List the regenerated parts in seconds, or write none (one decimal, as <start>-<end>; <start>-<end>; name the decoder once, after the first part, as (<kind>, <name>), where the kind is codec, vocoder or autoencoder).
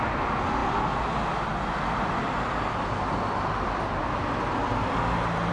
none